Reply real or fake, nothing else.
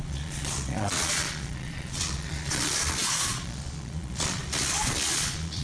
fake